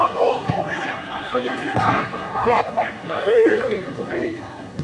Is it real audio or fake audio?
fake